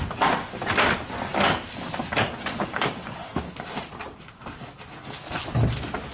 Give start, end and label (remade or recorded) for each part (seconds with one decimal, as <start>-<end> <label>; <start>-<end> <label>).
0.0-2.7 recorded; 2.7-3.3 remade; 3.3-6.1 recorded